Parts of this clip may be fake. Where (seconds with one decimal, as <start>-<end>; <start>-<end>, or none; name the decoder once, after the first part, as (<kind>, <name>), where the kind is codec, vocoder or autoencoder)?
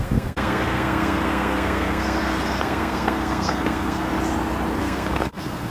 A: 0.0-4.1 (codec, SNAC); 4.8-5.7